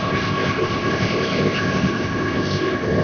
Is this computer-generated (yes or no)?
yes